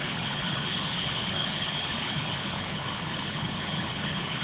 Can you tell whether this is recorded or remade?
remade